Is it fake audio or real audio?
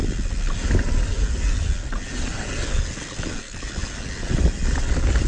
real